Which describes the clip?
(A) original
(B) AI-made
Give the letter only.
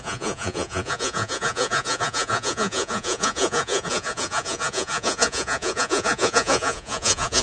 B